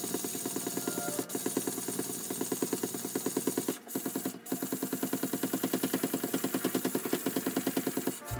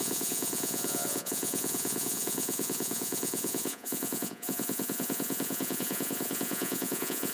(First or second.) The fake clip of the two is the second